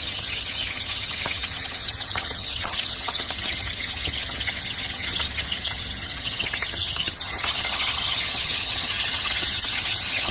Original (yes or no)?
no